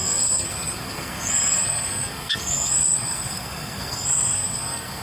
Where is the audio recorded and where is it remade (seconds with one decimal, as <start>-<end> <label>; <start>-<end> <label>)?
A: 0.0-5.0 remade